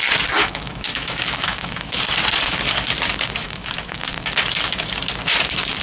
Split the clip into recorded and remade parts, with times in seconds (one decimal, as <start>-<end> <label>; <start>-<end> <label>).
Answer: 0.0-0.4 recorded; 0.4-2.0 remade; 2.0-3.4 recorded; 3.4-4.0 remade; 4.0-5.8 recorded

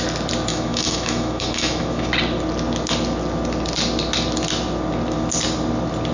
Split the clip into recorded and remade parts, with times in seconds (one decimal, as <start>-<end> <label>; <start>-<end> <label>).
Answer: 0.0-0.5 recorded; 0.5-2.1 remade; 2.1-6.1 recorded